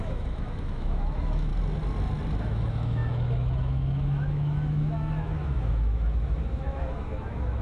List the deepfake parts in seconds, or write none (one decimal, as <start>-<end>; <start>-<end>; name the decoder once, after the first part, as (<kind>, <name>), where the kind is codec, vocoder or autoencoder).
0.0-1.5 (autoencoder, DAC-VAE); 2.4-7.6